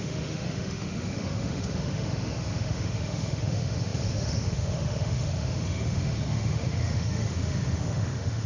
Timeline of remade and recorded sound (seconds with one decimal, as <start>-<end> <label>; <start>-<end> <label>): 0.0-8.5 remade

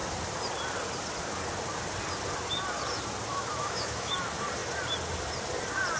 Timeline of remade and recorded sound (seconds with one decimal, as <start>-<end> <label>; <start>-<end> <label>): 0.0-3.3 recorded; 3.3-4.1 remade; 4.1-6.0 recorded

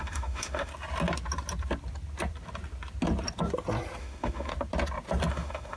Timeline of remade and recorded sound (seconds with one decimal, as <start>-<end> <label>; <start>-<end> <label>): 0.0-0.7 remade; 0.7-4.0 recorded; 4.0-4.5 remade; 4.5-5.3 recorded; 5.3-5.8 remade